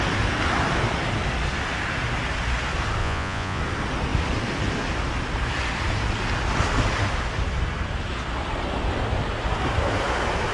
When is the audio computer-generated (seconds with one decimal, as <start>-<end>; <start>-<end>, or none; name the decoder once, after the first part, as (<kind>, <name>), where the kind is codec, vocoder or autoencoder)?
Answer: 3.0-3.6 (vocoder, Vocos)